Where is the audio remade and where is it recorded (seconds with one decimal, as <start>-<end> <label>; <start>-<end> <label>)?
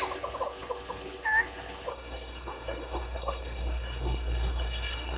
0.0-1.9 recorded; 1.9-5.2 remade